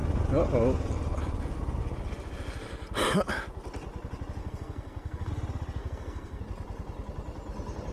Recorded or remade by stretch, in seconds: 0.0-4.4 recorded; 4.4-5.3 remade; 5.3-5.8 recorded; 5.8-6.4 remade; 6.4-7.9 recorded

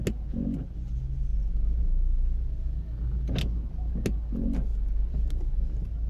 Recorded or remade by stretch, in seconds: 0.0-6.1 recorded